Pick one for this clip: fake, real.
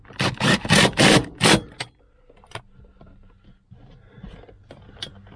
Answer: real